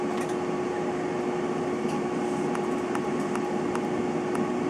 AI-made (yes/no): no